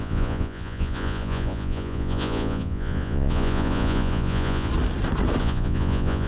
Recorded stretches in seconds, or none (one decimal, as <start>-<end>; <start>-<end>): 4.7-5.4